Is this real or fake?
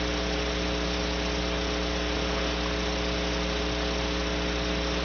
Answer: real